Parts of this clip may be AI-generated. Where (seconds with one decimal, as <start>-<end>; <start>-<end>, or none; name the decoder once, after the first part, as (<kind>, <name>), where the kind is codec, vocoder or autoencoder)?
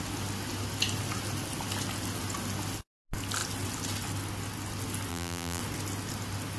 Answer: 5.1-5.6 (vocoder, BigVGAN v2)